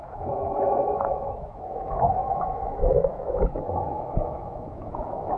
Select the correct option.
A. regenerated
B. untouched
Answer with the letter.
A